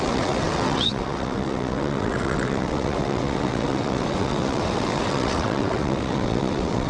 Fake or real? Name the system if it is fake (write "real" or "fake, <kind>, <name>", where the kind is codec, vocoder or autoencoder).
fake, vocoder, WaveNeXt